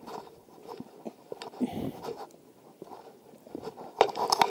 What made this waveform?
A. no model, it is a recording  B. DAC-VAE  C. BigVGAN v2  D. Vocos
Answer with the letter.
A